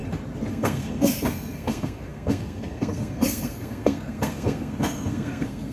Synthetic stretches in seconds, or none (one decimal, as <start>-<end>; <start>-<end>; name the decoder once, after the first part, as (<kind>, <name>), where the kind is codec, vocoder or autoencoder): 0.5-5.7 (codec, SNAC)